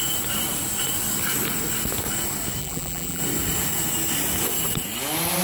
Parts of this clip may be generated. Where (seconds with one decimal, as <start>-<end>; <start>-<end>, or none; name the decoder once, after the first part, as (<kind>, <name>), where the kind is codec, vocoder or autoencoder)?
2.6-3.2 (vocoder, BigVGAN v2)